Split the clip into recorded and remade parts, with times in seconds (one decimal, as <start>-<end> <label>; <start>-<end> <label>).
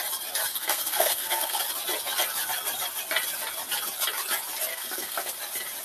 0.0-0.5 recorded; 0.5-1.6 remade; 1.6-4.7 recorded; 4.7-5.3 remade; 5.3-5.8 recorded